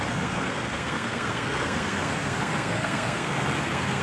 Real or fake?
fake